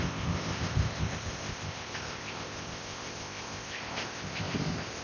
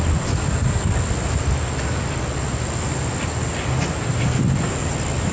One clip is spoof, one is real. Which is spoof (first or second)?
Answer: first